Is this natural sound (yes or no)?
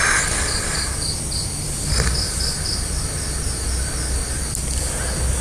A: yes